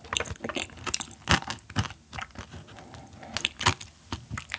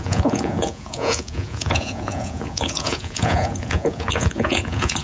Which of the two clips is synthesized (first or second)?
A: second